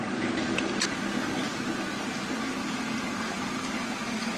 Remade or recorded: recorded